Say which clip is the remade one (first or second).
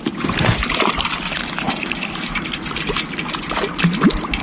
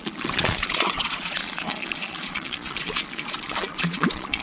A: second